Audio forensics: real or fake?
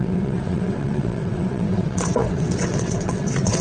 fake